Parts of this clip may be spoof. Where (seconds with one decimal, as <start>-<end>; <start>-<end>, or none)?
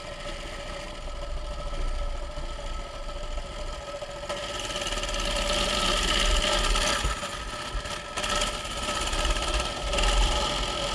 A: none